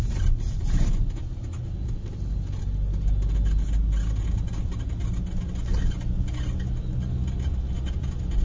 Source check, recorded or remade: recorded